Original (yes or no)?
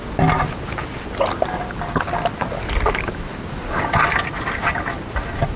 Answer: yes